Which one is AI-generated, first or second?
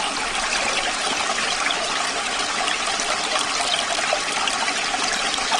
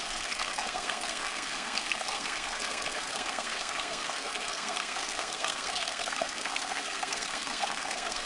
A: second